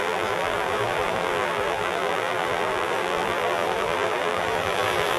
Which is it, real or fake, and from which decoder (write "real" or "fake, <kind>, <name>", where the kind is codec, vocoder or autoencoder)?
fake, vocoder, BigVGAN v2